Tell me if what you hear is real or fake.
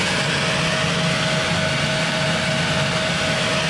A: real